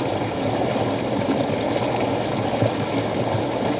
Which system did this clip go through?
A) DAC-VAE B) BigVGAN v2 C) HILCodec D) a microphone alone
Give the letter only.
D